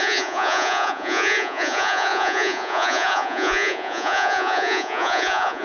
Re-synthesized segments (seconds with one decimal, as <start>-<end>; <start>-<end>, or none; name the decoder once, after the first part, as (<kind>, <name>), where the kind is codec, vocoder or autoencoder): 0.0-5.6 (vocoder, Vocos)